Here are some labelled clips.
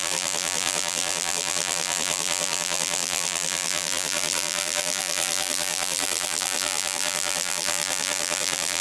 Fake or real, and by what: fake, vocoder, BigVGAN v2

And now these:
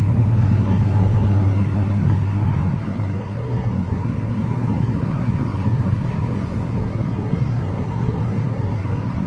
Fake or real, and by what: fake, codec, SNAC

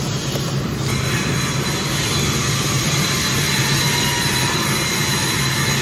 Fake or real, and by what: real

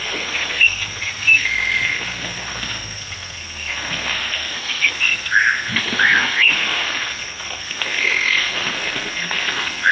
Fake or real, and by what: fake, codec, SNAC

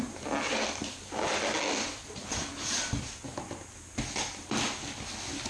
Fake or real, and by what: real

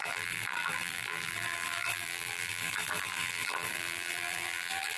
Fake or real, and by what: fake, vocoder, BigVGAN v2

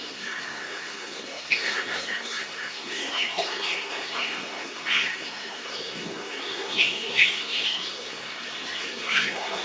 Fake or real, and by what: fake, codec, SNAC